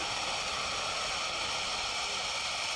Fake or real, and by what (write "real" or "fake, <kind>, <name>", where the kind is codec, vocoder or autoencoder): real